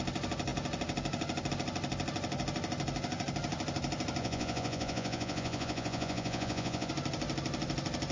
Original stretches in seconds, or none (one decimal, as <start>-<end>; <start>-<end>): 0.0-4.2; 6.9-8.1